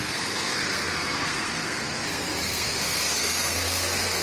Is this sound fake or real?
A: fake